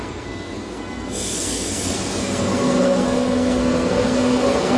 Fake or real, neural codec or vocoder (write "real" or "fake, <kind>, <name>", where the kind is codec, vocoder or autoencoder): fake, codec, SNAC